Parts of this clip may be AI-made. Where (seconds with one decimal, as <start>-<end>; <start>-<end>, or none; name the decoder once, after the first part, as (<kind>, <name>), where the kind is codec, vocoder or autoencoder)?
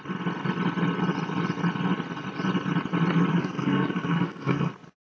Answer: 3.3-4.7 (codec, SNAC)